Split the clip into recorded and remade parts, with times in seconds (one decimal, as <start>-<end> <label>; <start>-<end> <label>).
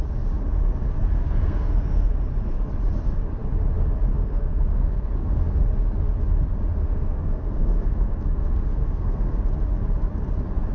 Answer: 0.0-1.2 recorded; 1.2-2.1 remade; 2.1-4.2 recorded; 4.2-5.1 remade; 5.1-6.8 recorded; 6.8-9.4 remade; 9.4-10.7 recorded